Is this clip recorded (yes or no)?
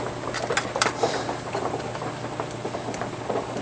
yes